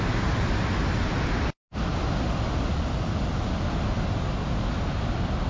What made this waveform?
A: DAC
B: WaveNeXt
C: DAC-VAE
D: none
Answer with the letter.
D